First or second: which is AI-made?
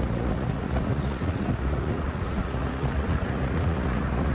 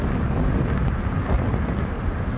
first